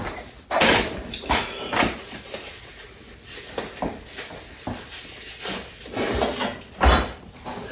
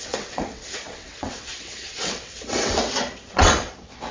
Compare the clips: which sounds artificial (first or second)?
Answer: second